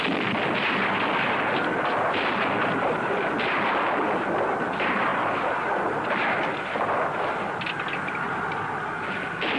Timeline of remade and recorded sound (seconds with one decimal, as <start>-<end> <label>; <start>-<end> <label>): 0.0-9.6 recorded